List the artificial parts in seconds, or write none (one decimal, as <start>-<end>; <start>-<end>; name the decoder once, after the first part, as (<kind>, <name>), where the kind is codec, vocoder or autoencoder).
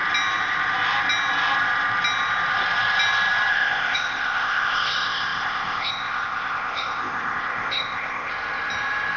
3.5-8.3 (codec, ZipCodec)